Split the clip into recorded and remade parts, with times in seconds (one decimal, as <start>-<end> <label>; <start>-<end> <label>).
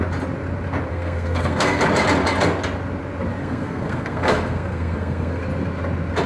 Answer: 0.0-0.9 recorded; 0.9-1.8 remade; 1.8-3.4 recorded; 3.4-5.4 remade; 5.4-6.3 recorded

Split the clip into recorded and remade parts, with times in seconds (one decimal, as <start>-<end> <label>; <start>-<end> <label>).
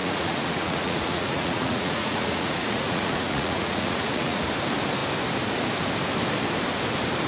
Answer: 0.0-4.4 remade; 4.4-7.3 recorded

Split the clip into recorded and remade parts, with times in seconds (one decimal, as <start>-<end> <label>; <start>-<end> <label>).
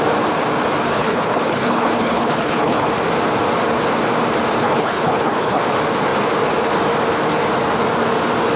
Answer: 0.0-0.9 recorded; 0.9-2.9 remade; 2.9-4.6 recorded; 4.6-5.6 remade; 5.6-8.6 recorded